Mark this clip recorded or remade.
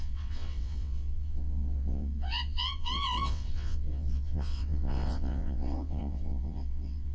remade